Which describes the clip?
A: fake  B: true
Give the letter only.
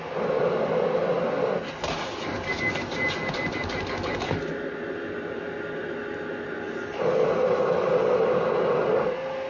B